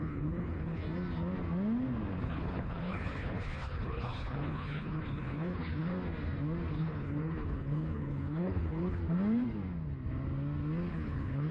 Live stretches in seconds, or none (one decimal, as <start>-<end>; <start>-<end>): 0.8-2.2; 5.9-6.7; 9.0-10.9